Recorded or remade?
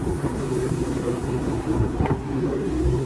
remade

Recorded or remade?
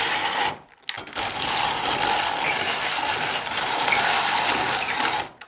recorded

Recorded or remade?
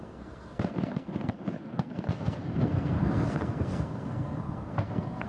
remade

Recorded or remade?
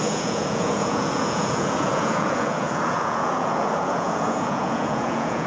remade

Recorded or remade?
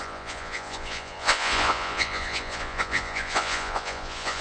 remade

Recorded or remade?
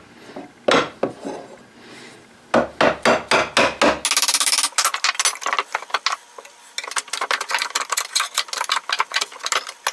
recorded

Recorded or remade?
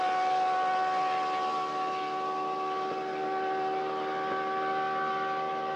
recorded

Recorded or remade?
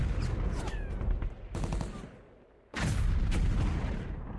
recorded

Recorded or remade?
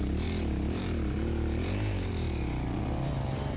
remade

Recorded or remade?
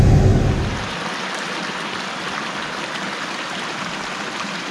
recorded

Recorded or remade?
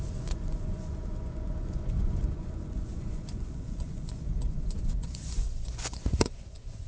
remade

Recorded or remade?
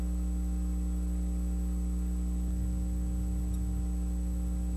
recorded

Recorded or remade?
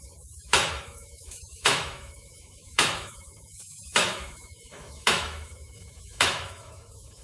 remade